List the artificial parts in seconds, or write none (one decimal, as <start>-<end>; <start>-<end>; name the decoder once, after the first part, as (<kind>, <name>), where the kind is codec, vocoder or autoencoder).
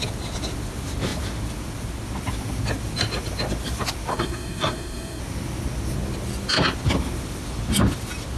4.1-5.2 (codec, SNAC)